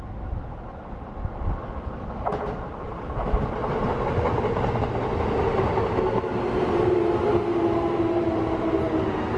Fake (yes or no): no